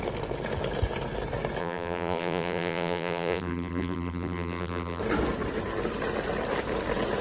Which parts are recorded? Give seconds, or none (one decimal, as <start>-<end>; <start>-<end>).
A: 0.0-1.6; 5.0-7.2